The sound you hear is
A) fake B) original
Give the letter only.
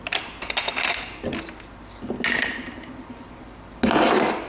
B